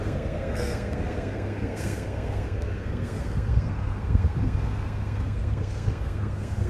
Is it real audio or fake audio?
fake